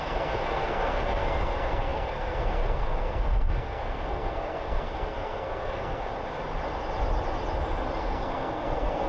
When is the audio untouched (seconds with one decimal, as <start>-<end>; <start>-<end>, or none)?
6.1-8.0